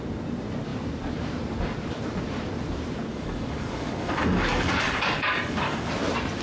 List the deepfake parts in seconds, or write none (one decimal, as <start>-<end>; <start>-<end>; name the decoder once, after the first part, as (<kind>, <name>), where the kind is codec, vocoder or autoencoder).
3.1-5.9 (codec, DAC)